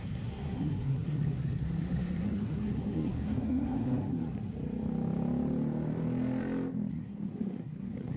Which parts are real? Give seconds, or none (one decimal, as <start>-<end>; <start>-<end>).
4.5-6.9